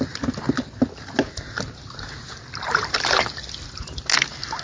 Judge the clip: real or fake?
real